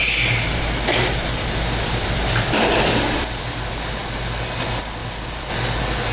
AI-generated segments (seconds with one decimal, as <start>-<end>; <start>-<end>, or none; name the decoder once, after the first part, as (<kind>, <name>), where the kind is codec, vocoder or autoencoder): 0.5-4.0 (vocoder, BigVGAN v2); 5.0-5.5